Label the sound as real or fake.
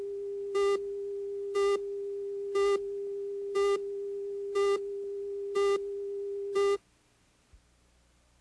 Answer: real